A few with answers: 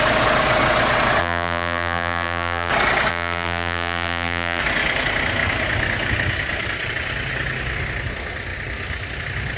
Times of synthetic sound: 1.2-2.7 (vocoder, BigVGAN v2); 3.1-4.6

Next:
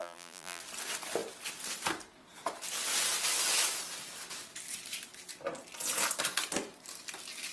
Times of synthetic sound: 0.0-0.6 (vocoder, BigVGAN v2)

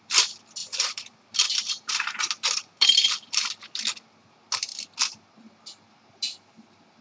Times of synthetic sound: 0.6-3.5 (vocoder, BigVGAN v2)

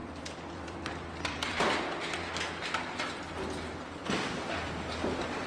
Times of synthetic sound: 0.0-3.3 (vocoder, BigVGAN v2); 4.0-4.7

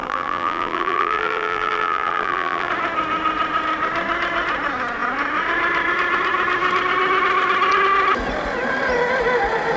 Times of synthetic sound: 0.0-2.7 (vocoder, BigVGAN v2)

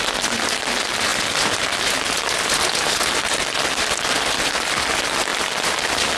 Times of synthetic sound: none